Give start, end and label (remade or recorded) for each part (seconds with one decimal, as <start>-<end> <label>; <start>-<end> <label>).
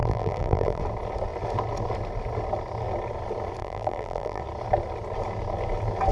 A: 0.0-0.8 remade; 0.8-3.6 recorded; 3.6-4.4 remade; 4.4-6.1 recorded